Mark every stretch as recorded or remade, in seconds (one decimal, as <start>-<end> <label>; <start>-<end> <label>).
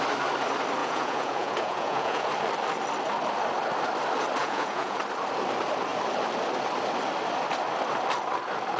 0.0-0.8 recorded; 0.8-2.3 remade; 2.3-4.4 recorded; 4.4-5.0 remade; 5.0-8.8 recorded